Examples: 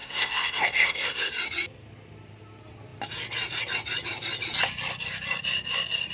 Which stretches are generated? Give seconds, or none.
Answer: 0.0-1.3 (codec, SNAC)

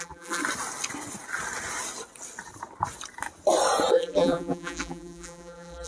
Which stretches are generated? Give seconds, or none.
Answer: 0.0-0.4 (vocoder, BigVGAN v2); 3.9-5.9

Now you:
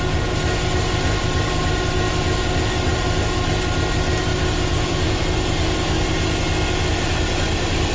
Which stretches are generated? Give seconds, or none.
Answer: 2.9-3.5 (vocoder, BigVGAN v2); 4.3-5.2